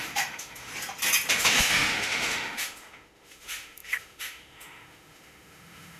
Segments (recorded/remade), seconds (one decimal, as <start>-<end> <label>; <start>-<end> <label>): 0.0-0.7 remade; 0.7-1.3 recorded; 1.3-6.0 remade